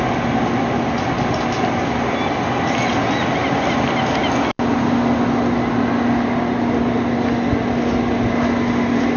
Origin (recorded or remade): recorded